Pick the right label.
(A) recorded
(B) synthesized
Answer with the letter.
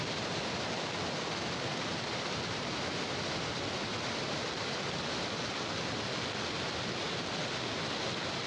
A